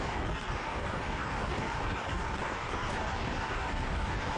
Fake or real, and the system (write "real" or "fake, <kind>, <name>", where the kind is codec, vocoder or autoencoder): fake, codec, DAC